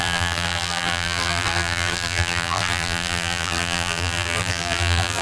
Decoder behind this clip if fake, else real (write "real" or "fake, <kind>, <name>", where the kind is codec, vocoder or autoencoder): fake, vocoder, BigVGAN v2